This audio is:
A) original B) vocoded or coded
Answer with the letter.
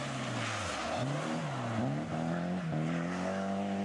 A